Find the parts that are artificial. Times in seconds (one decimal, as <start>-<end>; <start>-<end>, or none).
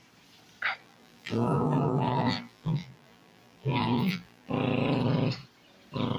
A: 0.8-4.5